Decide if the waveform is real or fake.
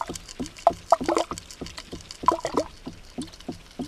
real